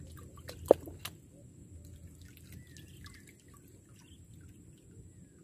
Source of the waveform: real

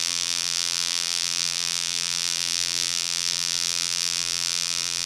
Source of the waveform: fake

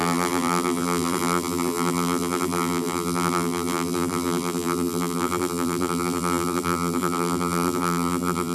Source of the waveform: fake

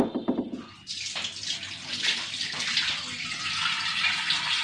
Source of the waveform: real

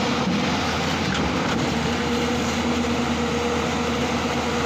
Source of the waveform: real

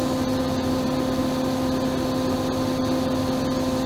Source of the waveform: real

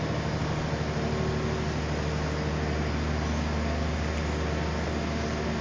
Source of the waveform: real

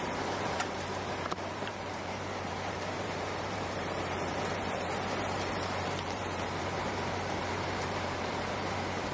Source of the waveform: fake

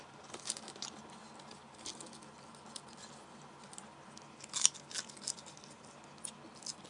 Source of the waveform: real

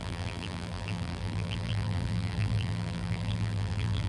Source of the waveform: fake